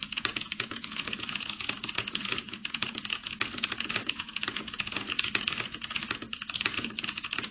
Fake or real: fake